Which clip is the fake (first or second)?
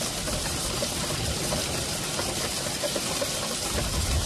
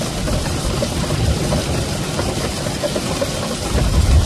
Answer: second